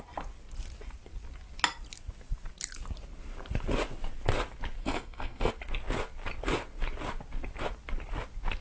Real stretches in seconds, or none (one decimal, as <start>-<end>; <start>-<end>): 0.0-4.8; 5.5-8.6